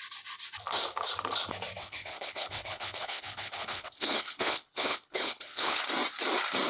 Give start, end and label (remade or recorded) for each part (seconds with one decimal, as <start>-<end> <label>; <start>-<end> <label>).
0.0-1.8 recorded; 1.8-5.8 remade; 5.8-6.7 recorded